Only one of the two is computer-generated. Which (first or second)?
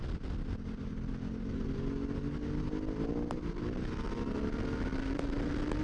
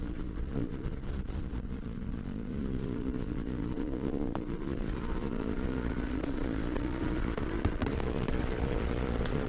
second